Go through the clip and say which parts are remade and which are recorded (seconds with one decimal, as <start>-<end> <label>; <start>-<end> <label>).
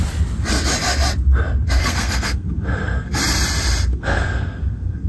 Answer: 0.0-1.8 recorded; 1.8-3.2 remade; 3.2-3.9 recorded; 3.9-5.1 remade